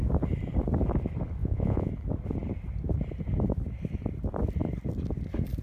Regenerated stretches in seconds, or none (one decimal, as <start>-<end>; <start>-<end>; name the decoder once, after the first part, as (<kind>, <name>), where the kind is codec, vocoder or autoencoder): 1.4-1.9 (vocoder, Vocos)